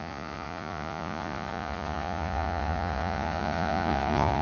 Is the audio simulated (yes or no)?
yes